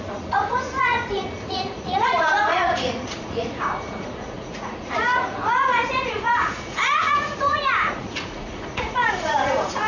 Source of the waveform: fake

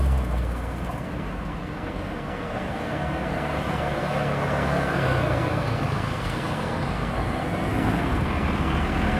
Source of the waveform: fake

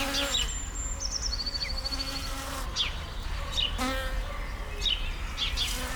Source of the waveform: real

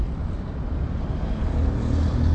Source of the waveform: real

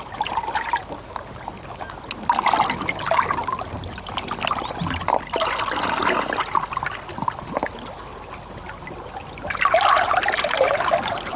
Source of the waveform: real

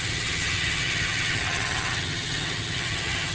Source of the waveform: fake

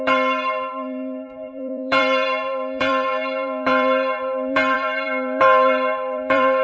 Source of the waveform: fake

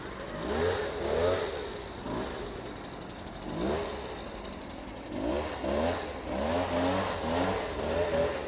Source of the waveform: real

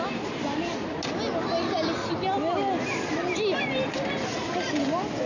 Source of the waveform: real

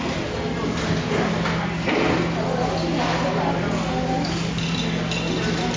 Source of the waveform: real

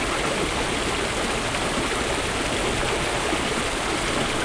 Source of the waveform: real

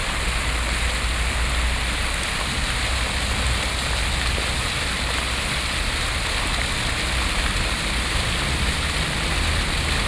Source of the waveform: real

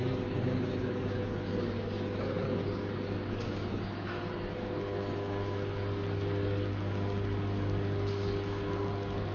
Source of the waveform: fake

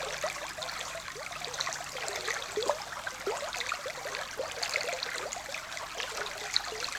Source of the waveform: real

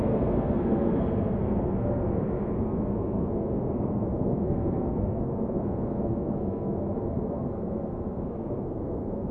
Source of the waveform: fake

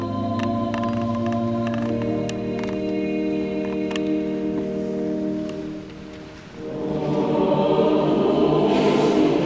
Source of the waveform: real